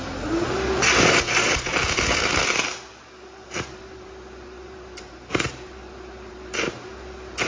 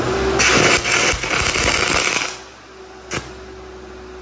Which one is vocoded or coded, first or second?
first